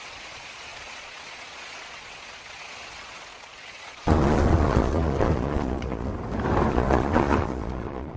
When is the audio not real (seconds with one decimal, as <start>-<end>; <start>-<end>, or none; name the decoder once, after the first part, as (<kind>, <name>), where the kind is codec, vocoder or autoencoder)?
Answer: 0.0-6.1 (vocoder, Vocos); 6.7-8.2